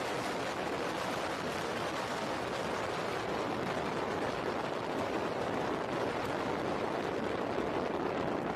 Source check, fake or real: real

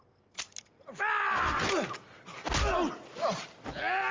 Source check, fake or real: real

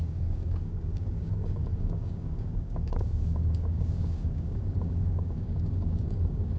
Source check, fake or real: fake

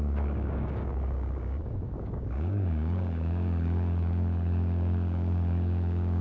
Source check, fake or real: fake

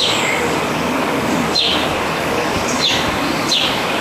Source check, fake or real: fake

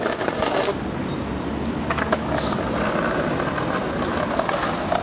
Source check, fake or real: real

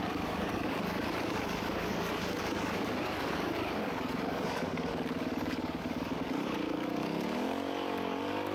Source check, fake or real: fake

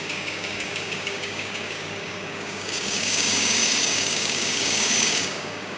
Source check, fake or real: fake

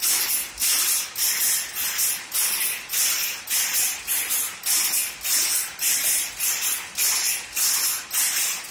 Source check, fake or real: real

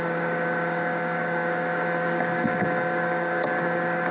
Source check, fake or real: fake